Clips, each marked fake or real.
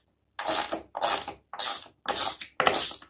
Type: real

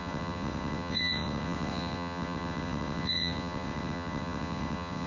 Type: fake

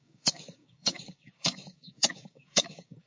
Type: fake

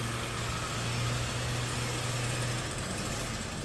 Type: real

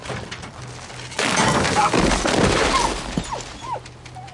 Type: real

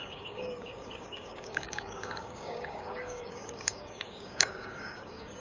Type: fake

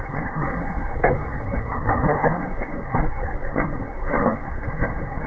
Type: fake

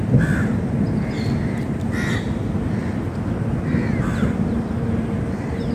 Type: real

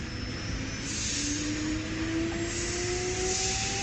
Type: real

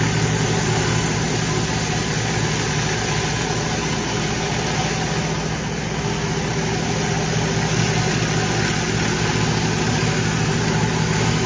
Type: real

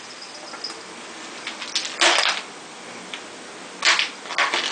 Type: real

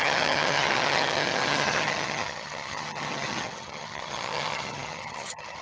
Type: fake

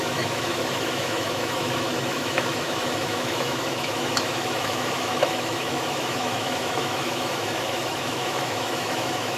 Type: fake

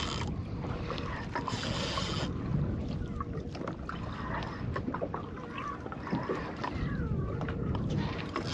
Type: real